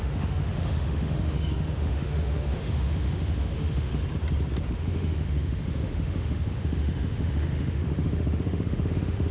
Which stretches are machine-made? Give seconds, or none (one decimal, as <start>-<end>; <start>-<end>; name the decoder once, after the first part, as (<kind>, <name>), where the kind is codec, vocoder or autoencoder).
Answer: 0.0-4.0 (autoencoder, DAC-VAE); 4.7-9.3